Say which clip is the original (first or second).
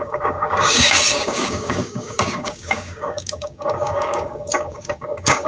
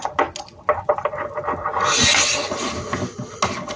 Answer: second